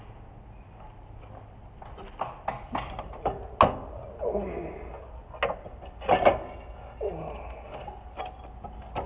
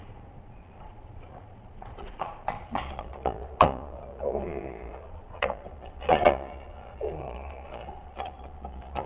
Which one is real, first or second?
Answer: first